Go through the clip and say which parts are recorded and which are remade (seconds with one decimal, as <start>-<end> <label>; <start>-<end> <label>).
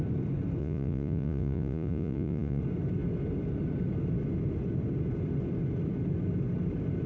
0.0-0.6 recorded; 0.6-2.6 remade; 2.6-7.1 recorded